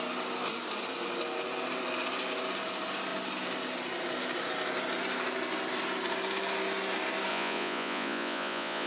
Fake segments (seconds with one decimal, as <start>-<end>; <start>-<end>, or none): 7.3-8.9